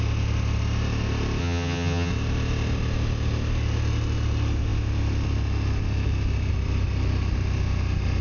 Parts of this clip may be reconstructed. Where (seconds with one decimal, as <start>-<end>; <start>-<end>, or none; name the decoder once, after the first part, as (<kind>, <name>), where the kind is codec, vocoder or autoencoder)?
1.4-2.1 (vocoder, HiFi-GAN)